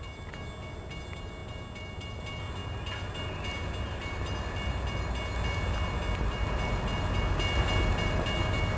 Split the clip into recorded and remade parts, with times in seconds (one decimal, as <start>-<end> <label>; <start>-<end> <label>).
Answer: 0.0-8.8 recorded